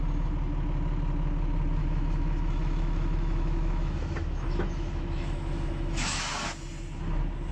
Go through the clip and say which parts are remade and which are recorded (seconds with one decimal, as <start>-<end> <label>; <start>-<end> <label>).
0.0-1.8 recorded; 1.8-6.3 remade; 6.3-7.5 recorded